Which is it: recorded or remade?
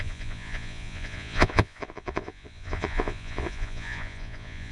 remade